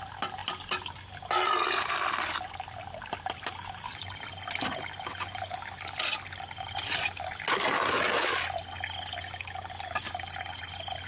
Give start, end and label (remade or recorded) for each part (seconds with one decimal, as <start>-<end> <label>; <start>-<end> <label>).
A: 0.0-11.1 recorded